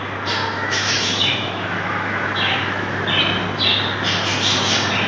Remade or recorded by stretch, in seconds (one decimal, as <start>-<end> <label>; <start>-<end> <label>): 0.0-0.5 recorded; 0.5-3.0 remade; 3.0-5.1 recorded